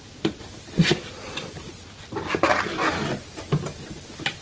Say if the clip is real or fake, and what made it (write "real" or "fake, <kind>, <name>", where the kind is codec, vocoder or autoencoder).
real